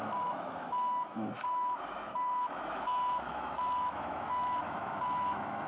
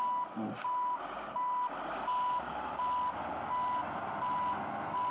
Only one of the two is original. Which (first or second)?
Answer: second